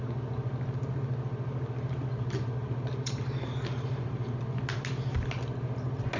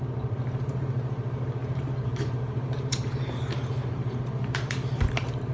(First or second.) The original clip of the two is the first